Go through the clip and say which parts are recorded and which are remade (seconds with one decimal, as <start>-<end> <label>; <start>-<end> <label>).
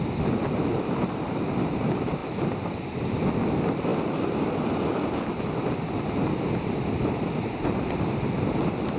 0.0-0.7 recorded; 0.7-1.7 remade; 1.7-2.2 recorded; 2.2-3.1 remade; 3.1-3.9 recorded; 3.9-7.6 remade; 7.6-9.0 recorded